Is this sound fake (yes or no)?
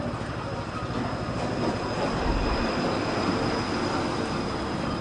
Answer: no